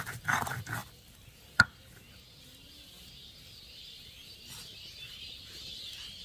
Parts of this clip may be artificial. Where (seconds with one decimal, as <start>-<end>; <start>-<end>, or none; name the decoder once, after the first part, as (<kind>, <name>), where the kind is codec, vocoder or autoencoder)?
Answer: none

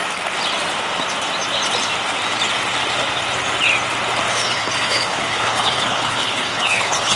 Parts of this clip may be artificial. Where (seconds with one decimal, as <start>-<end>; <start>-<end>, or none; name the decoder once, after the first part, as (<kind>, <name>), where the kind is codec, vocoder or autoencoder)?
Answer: 4.3-7.2 (codec, HILCodec)

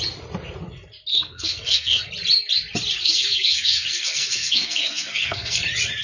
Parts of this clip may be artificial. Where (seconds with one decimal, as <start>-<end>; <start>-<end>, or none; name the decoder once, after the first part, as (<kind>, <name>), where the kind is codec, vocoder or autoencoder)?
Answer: 1.1-2.1 (codec, SNAC); 3.0-5.6

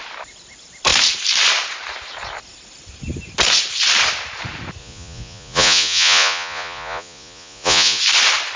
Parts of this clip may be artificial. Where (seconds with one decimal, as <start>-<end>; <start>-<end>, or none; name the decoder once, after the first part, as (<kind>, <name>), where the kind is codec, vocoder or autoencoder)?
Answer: 4.8-8.0 (vocoder, Vocos)